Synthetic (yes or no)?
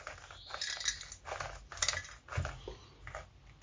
no